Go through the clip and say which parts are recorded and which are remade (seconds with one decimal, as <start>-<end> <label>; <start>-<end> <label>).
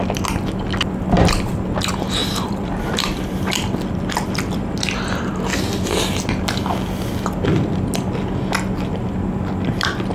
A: 0.0-2.2 recorded; 2.2-5.6 remade; 5.6-10.1 recorded